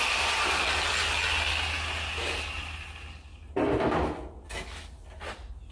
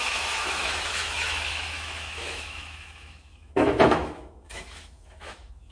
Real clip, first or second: first